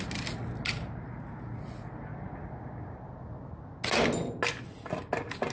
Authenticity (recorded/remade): recorded